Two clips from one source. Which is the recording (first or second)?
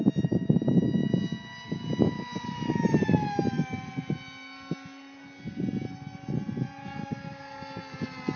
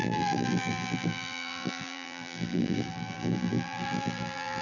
first